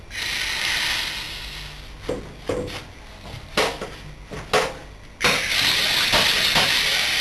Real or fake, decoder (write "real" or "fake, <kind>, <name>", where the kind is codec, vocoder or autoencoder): real